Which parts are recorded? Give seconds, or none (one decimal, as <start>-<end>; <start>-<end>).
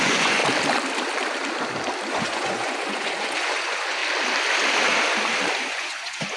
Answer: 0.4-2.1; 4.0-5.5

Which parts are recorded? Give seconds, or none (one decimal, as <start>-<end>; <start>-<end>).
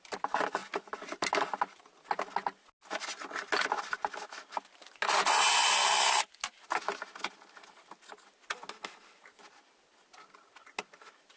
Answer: 0.0-11.4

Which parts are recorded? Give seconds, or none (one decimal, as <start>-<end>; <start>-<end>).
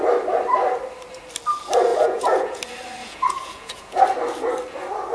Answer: 0.0-1.9; 2.6-3.0; 4.0-5.1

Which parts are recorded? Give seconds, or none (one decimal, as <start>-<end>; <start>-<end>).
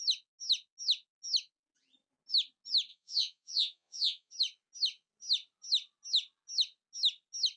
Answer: 0.0-2.9; 4.3-7.6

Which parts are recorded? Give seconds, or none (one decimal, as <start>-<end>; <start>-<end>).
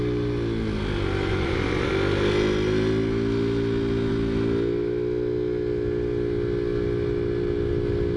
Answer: 0.0-1.3; 1.9-8.2